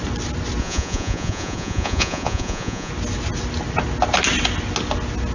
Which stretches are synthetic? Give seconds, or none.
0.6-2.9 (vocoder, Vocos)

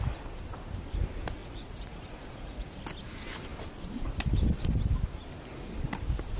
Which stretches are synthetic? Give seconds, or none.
1.4-2.8 (vocoder, Vocos)

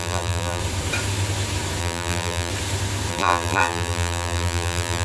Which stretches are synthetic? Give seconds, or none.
0.0-0.6 (vocoder, BigVGAN v2); 1.8-2.5; 3.1-5.0